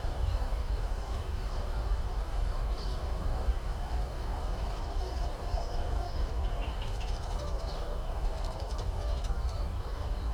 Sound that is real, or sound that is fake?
fake